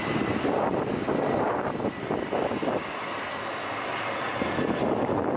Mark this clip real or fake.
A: real